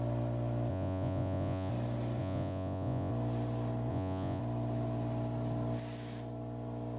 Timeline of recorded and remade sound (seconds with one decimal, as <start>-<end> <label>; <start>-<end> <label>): 0.0-0.7 recorded; 0.7-1.7 remade; 1.7-2.2 recorded; 2.2-3.1 remade; 3.1-3.9 recorded; 3.9-4.4 remade; 4.4-7.0 recorded

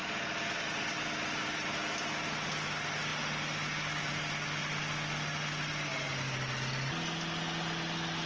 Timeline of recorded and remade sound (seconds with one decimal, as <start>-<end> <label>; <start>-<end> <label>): 0.0-8.3 recorded